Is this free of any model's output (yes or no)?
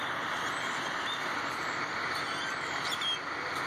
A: yes